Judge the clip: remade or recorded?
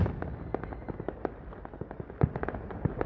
remade